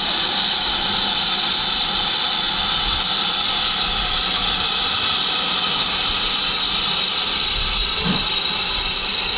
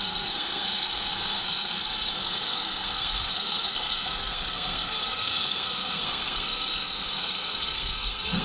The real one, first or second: first